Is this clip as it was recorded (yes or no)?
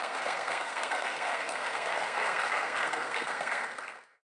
no